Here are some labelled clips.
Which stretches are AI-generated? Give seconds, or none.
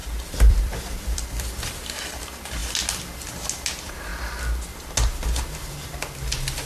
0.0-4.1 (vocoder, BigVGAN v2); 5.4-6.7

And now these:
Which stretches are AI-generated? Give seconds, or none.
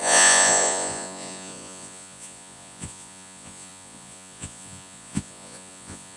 0.0-6.2 (vocoder, Vocos)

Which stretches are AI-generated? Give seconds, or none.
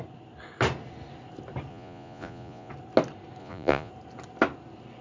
1.7-2.7 (vocoder, Vocos); 3.4-3.9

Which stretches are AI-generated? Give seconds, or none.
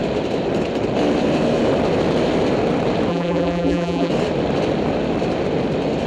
3.1-4.1 (vocoder, BigVGAN v2)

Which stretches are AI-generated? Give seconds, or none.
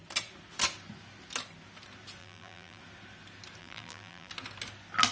2.2-2.8 (vocoder, BigVGAN v2); 3.6-4.3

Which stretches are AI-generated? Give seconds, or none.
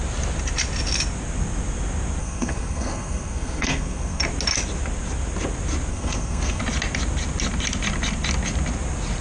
2.2-4.2 (codec, SNAC); 5.9-6.6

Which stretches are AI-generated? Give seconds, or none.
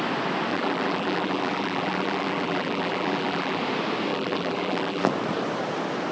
0.5-3.6 (vocoder, BigVGAN v2); 4.1-5.1